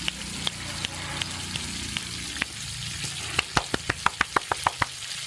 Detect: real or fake real